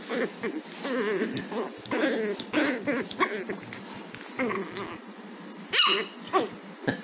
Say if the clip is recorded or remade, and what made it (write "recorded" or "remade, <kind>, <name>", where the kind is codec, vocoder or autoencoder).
recorded